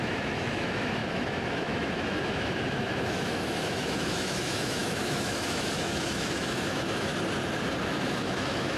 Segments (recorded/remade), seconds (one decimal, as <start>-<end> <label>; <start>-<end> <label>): 0.0-7.1 remade; 7.1-7.8 recorded; 7.8-8.8 remade